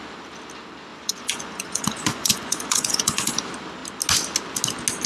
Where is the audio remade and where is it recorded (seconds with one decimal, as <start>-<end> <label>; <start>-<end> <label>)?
0.0-0.9 recorded; 0.9-3.3 remade; 3.3-5.1 recorded